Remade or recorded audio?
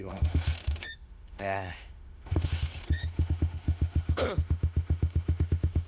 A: remade